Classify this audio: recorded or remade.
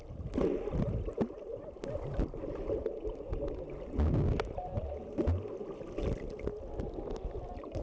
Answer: recorded